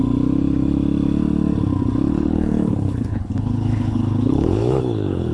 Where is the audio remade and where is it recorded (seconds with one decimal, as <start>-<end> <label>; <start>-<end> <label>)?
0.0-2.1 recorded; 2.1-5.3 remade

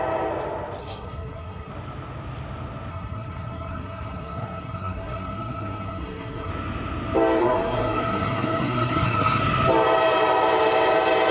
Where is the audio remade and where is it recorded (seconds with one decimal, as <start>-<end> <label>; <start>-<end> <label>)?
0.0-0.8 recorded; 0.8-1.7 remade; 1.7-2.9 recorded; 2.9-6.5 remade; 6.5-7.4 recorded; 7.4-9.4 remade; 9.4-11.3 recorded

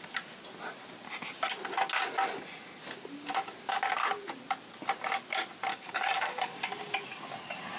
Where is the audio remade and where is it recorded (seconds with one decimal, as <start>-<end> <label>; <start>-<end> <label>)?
0.0-5.7 recorded; 5.7-6.5 remade; 6.5-7.8 recorded

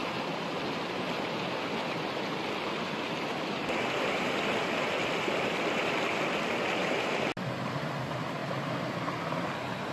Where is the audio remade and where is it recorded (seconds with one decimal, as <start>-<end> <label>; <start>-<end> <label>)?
0.0-9.9 recorded

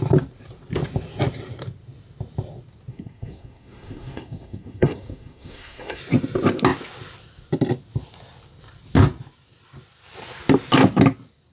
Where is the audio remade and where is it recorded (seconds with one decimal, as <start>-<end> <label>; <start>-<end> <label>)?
0.0-2.9 recorded; 2.9-6.0 remade; 6.0-11.5 recorded

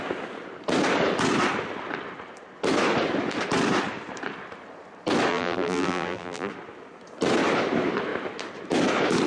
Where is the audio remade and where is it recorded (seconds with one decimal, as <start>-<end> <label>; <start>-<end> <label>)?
0.0-5.3 recorded; 5.3-6.5 remade; 6.5-9.3 recorded